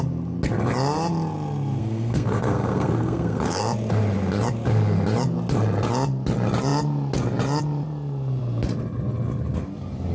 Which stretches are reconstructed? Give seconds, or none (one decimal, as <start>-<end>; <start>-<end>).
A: 1.8-3.6